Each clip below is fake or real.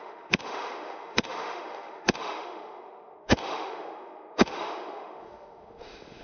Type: fake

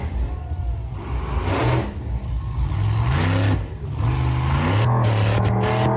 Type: real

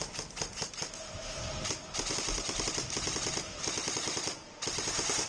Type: real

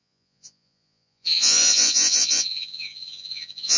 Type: fake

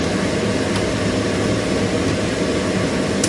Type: real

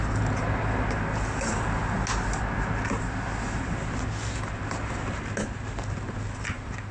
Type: real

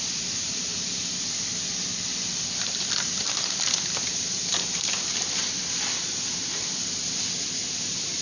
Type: fake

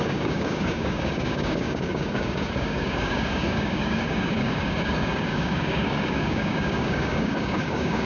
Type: fake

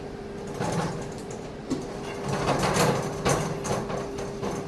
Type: real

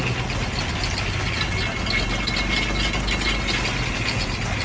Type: real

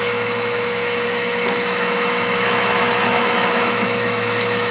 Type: fake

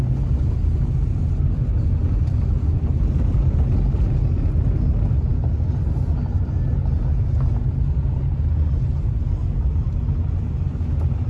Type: real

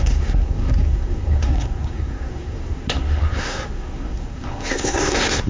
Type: fake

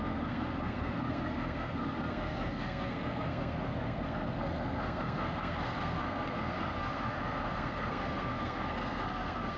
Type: fake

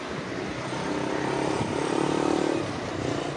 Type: real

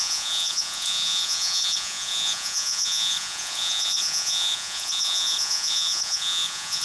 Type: fake